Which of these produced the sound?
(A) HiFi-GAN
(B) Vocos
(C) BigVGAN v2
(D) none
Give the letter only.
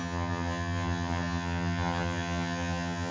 A